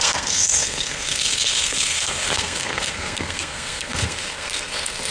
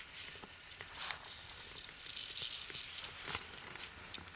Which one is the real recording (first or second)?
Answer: second